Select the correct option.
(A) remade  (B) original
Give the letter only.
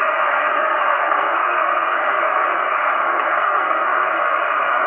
A